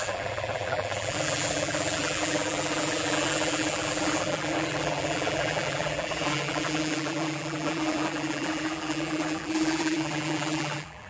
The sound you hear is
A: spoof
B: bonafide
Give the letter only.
A